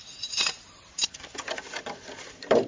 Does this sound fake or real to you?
real